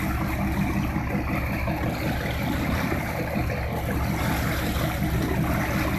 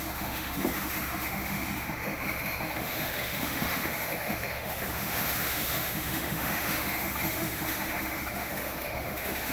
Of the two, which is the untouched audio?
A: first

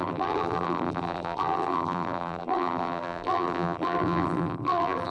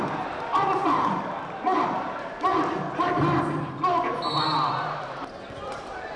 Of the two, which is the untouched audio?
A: second